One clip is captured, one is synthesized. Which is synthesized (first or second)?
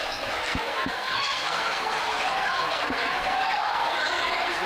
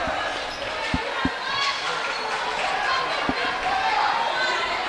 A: first